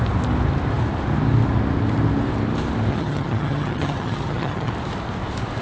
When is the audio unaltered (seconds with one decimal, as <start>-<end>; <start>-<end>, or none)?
0.0-2.9; 4.7-5.6

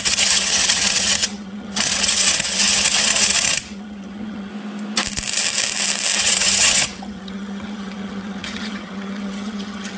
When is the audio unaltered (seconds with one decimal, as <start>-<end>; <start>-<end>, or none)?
4.5-6.2

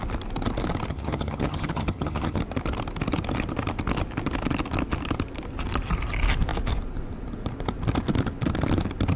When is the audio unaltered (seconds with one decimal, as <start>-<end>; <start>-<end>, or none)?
0.0-0.9; 2.4-9.2

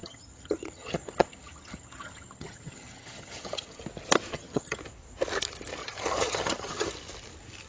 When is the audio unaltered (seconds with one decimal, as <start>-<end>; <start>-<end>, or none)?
3.8-4.3; 4.8-5.8; 6.9-7.7

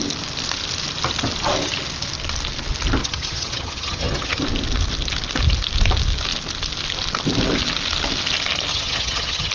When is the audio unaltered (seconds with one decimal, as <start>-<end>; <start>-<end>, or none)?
0.0-3.0; 4.4-8.7

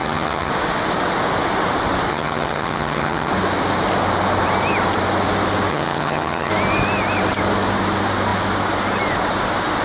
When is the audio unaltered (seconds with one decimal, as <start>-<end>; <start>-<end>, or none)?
0.5-2.1; 3.3-5.7; 6.5-9.8

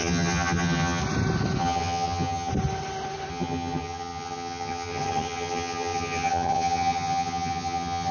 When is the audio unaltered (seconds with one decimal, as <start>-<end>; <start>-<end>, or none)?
1.0-1.6; 2.5-3.3